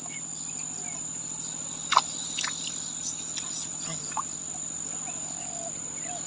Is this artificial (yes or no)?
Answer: no